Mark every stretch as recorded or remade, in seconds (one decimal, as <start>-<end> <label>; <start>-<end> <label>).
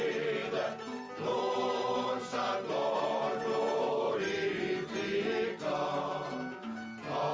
0.0-7.3 recorded